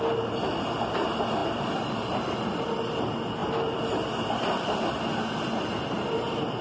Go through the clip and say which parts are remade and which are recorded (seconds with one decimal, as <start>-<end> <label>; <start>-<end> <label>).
0.0-6.6 recorded

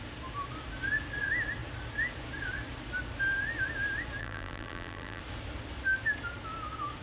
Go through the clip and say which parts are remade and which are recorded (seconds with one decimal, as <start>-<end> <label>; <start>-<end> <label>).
0.0-4.2 recorded; 4.2-5.2 remade; 5.2-7.0 recorded